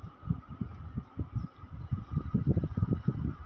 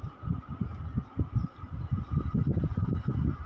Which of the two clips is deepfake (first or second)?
first